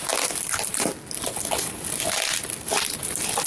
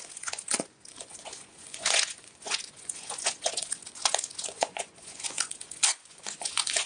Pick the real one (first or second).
first